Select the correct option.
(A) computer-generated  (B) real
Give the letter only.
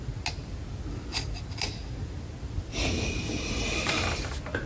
B